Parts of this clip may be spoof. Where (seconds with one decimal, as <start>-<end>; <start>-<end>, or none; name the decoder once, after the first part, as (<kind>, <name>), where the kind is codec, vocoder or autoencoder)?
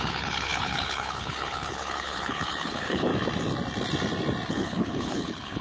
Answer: 0.0-3.1 (codec, HILCodec); 4.5-5.6